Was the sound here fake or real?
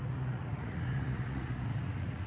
fake